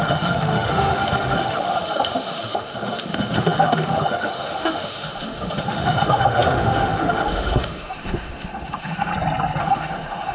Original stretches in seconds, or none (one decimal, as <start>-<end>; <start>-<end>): 9.1-9.6